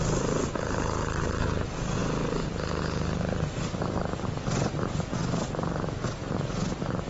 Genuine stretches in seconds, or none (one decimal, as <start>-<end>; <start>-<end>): 0.0-7.1